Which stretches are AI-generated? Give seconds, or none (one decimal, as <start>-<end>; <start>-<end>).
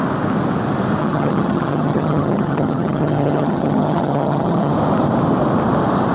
1.0-4.7